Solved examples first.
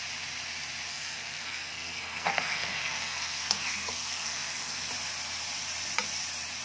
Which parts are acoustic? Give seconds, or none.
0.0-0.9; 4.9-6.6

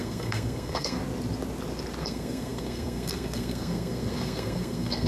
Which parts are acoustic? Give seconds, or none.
1.0-2.0

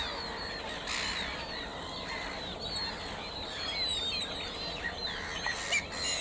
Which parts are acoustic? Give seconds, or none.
0.0-6.2

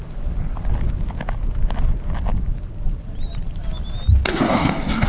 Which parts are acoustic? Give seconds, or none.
0.0-4.3

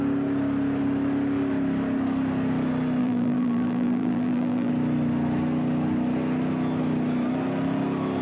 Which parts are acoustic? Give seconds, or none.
0.0-3.0; 4.7-8.2